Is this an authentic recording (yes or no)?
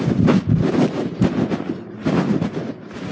yes